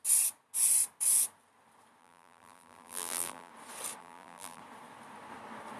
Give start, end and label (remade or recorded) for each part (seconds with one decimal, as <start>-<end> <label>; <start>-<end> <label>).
0.0-2.0 recorded; 2.0-3.5 remade; 3.5-4.0 recorded; 4.0-4.6 remade; 4.6-5.8 recorded

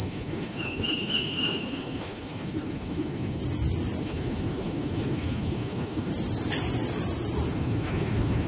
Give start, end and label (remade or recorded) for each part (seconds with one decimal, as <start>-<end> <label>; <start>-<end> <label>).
0.0-3.4 remade; 3.4-4.0 recorded; 4.0-6.1 remade; 6.1-7.5 recorded; 7.5-8.5 remade